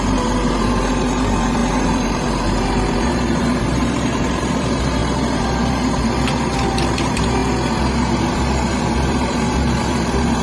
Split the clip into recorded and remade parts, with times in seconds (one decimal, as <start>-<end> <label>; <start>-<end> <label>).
0.0-7.4 remade; 7.4-8.3 recorded; 8.3-10.4 remade